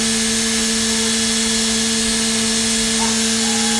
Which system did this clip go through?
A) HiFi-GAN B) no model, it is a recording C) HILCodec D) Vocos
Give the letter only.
B